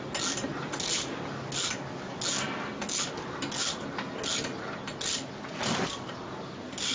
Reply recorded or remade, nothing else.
recorded